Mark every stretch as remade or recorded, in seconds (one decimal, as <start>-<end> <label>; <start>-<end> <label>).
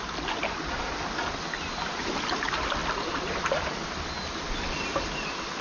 0.0-5.6 recorded